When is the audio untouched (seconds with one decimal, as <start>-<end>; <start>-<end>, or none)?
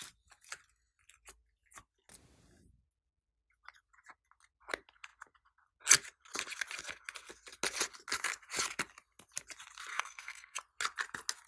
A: 0.0-9.9; 10.6-11.5